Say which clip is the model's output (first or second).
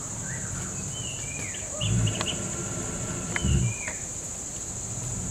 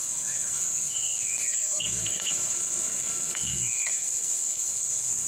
second